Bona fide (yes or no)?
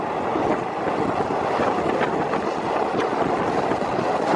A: yes